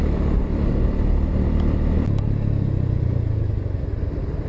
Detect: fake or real real